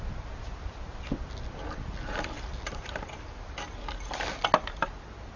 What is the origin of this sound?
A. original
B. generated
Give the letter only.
A